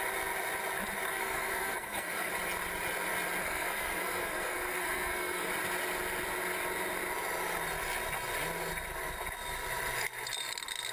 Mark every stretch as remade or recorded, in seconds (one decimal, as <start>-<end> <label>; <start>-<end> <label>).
0.0-1.1 recorded; 1.1-2.3 remade; 2.3-3.4 recorded; 3.4-5.5 remade; 5.5-10.9 recorded